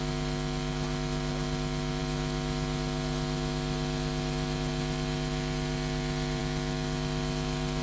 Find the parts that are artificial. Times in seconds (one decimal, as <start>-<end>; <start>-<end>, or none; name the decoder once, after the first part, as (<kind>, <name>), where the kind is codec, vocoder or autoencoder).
none